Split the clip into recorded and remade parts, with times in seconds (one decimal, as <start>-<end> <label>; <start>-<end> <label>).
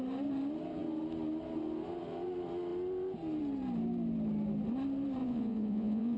0.0-5.2 recorded; 5.2-6.2 remade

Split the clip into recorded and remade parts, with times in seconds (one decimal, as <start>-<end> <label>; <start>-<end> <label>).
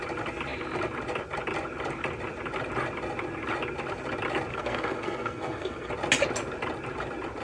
0.0-4.5 recorded; 4.5-5.9 remade; 5.9-7.4 recorded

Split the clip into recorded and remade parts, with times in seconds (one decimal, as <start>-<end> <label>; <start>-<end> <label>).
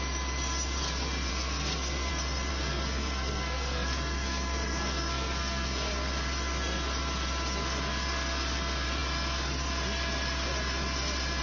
0.0-1.3 recorded; 1.3-2.1 remade; 2.1-2.5 recorded; 2.5-5.9 remade; 5.9-11.4 recorded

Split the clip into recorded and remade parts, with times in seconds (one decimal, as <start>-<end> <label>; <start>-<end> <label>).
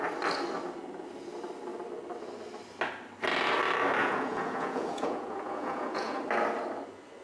0.0-4.0 recorded; 4.0-6.2 remade; 6.2-7.2 recorded